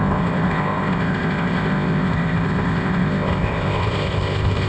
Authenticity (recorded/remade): remade